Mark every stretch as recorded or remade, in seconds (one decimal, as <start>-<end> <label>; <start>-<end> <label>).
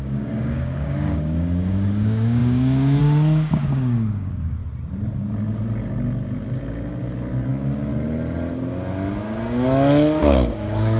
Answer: 0.0-4.6 remade; 4.6-7.5 recorded; 7.5-7.9 remade; 7.9-10.2 recorded; 10.2-11.0 remade